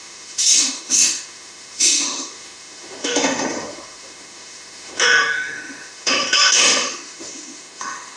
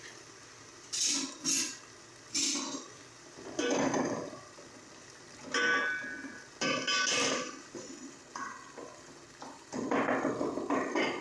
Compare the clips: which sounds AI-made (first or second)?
first